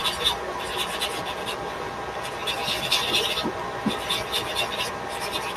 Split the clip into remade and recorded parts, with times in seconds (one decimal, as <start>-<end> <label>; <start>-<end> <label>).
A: 0.0-5.6 recorded